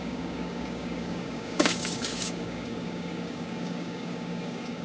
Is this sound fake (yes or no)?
yes